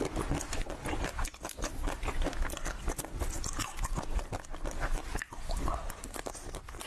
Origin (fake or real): real